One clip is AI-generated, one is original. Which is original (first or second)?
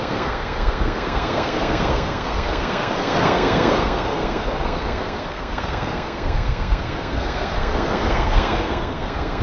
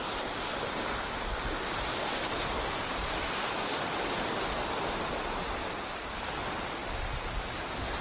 second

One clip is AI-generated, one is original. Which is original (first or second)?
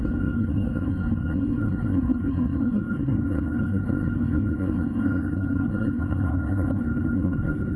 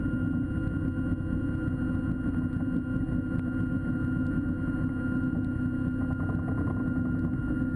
second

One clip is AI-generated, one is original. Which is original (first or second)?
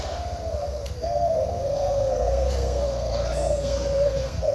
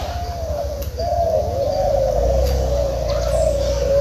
second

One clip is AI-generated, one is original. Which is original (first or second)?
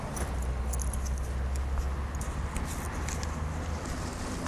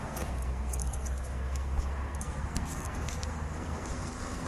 first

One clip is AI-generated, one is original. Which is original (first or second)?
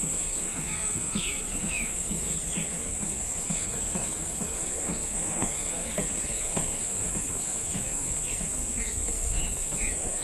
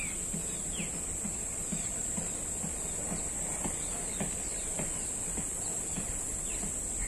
second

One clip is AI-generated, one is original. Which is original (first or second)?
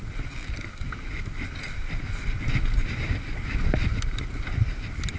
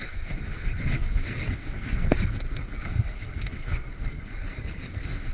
first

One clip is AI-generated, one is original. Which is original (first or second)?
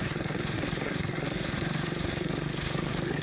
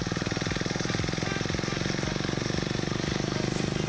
second